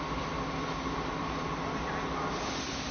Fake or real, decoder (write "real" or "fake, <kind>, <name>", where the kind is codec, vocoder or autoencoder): real